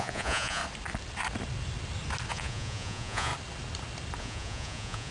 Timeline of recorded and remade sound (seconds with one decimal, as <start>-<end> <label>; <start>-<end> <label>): 0.0-0.6 remade; 0.6-2.3 recorded; 2.3-3.3 remade; 3.3-4.2 recorded; 4.2-5.1 remade